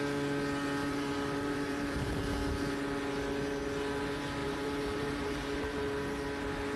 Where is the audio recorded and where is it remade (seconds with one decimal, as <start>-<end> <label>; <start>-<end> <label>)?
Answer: 0.0-0.8 recorded; 0.8-2.1 remade; 2.1-4.4 recorded; 4.4-5.8 remade; 5.8-6.8 recorded